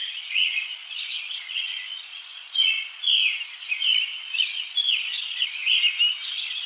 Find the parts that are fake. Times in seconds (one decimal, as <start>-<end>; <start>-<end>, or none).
0.0-3.2; 4.2-5.6; 6.3-6.7